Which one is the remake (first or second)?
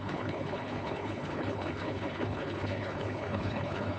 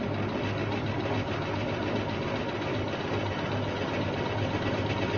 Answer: first